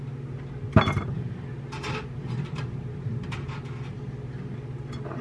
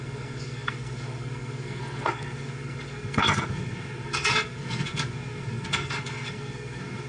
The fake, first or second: second